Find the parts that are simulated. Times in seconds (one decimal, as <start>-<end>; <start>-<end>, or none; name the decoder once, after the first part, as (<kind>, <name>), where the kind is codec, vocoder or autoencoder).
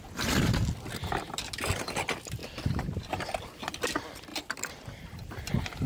none